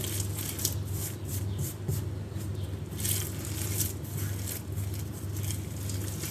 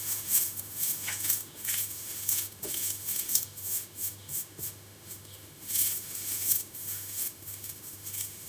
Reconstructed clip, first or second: second